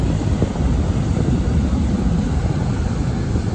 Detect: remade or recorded recorded